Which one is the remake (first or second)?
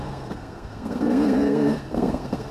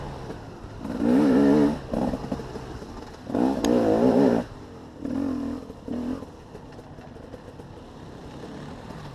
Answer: first